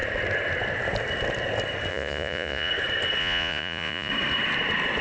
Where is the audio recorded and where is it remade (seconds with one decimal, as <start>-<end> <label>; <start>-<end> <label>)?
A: 0.0-1.9 recorded; 1.9-2.7 remade; 2.7-3.2 recorded; 3.2-4.1 remade; 4.1-5.0 recorded